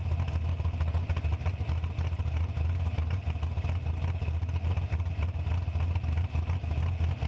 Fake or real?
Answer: real